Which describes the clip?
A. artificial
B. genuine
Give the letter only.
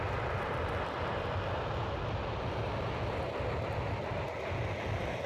B